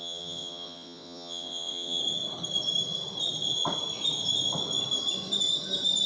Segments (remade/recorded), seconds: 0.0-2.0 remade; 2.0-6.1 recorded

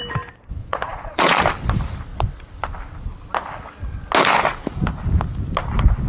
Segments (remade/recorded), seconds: 0.0-0.6 recorded; 0.6-1.4 remade; 1.4-6.1 recorded

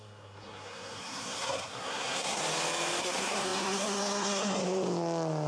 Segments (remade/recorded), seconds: 0.0-2.4 remade; 2.4-3.0 recorded; 3.0-4.6 remade; 4.6-5.5 recorded

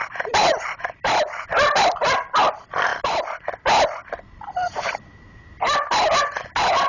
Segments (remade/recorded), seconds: 0.0-0.8 remade; 0.8-6.9 recorded

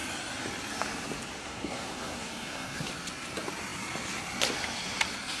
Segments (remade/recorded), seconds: 0.0-1.4 recorded; 1.4-2.9 remade; 2.9-5.4 recorded

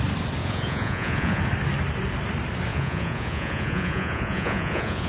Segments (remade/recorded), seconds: 0.0-0.4 recorded; 0.4-1.4 remade; 1.4-2.7 recorded; 2.7-5.1 remade